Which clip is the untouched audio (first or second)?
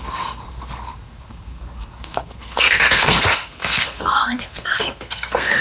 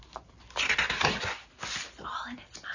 second